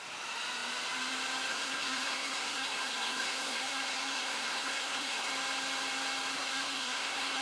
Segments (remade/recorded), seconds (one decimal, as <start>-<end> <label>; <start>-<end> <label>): 0.0-1.5 recorded; 1.5-5.3 remade; 5.3-6.3 recorded; 6.3-7.4 remade